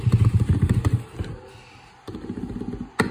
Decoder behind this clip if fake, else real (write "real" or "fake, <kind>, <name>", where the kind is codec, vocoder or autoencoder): real